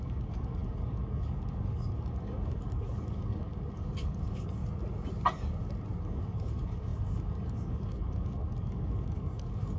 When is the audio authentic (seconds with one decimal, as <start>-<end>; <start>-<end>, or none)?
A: 4.6-6.0